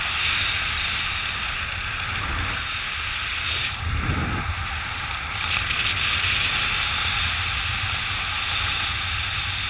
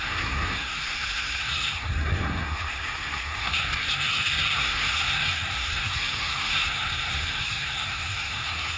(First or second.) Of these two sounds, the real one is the first